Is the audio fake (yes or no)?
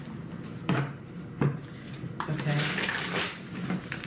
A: yes